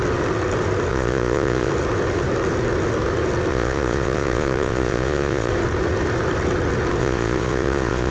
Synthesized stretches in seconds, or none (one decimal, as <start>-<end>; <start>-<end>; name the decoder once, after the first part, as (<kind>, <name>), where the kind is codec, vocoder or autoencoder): 0.9-1.7 (vocoder, Vocos); 3.5-5.5; 7.0-8.1